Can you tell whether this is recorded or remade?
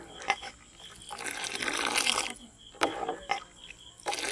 recorded